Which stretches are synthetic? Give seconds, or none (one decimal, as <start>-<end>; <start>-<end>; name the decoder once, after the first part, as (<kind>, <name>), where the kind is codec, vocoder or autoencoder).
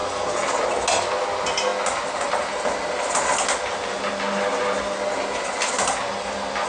none